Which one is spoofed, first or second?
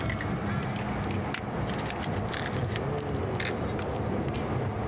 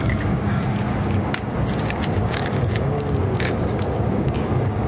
second